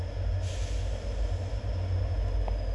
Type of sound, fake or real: real